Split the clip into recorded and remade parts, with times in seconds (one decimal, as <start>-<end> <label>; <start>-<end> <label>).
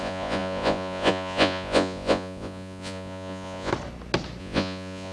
0.0-3.7 remade; 3.7-4.4 recorded; 4.4-5.1 remade